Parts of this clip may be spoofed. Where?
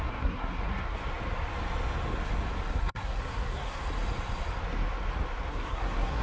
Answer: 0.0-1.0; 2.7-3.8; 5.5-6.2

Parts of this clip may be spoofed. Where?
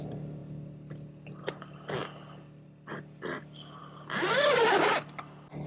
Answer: none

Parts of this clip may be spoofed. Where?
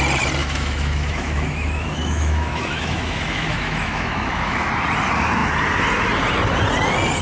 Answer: 0.4-4.7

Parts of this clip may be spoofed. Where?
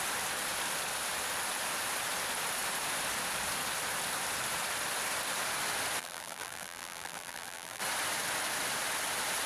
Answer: 6.0-7.8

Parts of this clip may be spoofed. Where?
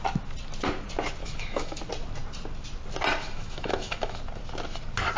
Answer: 1.2-1.8; 3.2-4.2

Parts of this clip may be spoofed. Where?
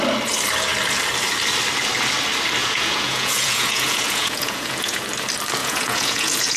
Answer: 2.6-5.0; 5.6-6.6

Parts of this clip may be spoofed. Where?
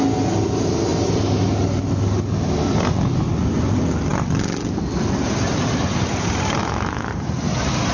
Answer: 6.6-7.1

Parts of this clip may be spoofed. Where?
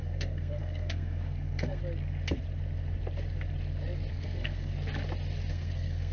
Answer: 0.0-1.8; 4.1-4.7; 5.5-6.1